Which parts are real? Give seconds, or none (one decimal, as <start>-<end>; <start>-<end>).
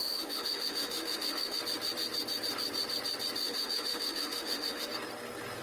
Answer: 1.6-3.4; 4.9-5.6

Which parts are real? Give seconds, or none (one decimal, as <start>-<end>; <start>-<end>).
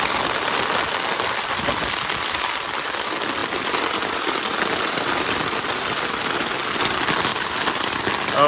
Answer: 0.0-3.4; 6.0-7.3; 8.0-8.5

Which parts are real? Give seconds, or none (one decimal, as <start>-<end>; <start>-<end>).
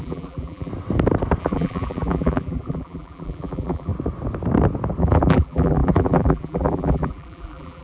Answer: 0.7-1.4; 3.9-5.0